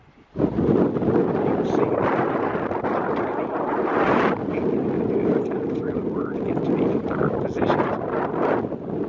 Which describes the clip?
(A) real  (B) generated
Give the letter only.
A